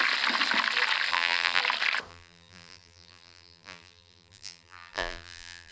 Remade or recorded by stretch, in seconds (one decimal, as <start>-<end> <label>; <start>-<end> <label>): 0.0-1.1 recorded; 1.1-1.6 remade; 1.6-2.1 recorded; 2.1-5.7 remade